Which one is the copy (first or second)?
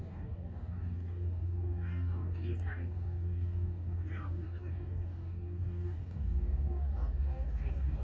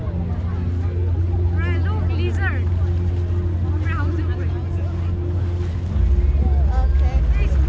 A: first